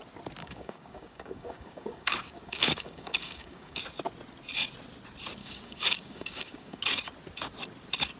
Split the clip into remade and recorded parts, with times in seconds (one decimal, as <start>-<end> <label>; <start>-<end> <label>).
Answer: 0.0-0.4 recorded; 0.4-3.8 remade; 3.8-5.4 recorded; 5.4-6.8 remade; 6.8-8.2 recorded